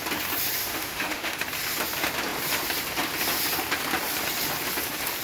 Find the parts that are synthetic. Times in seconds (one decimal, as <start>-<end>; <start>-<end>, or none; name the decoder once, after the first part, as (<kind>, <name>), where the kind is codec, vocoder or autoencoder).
0.6-1.4 (autoencoder, DAC-VAE)